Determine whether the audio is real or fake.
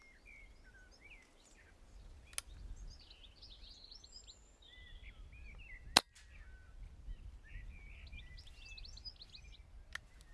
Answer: real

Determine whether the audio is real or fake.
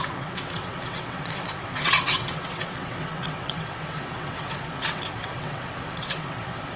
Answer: fake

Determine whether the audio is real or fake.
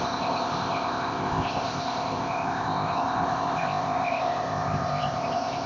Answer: fake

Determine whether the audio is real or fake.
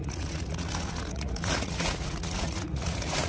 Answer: fake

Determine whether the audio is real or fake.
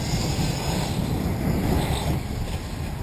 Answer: real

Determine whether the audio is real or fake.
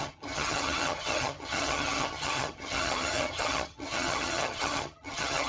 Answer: fake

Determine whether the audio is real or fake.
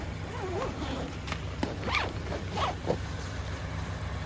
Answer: real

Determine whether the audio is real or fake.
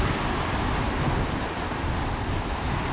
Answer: real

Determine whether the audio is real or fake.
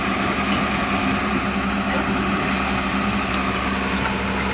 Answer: real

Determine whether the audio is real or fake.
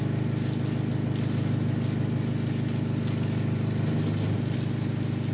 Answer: real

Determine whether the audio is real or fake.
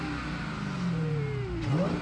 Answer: real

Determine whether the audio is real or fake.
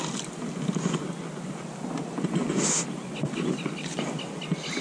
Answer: real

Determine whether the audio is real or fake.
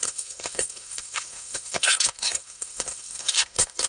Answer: fake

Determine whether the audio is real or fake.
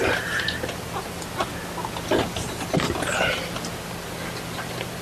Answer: real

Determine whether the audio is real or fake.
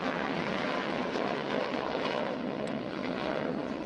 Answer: fake